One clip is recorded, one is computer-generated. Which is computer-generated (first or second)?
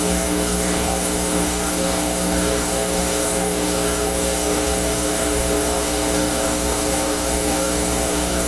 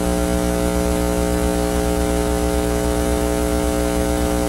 first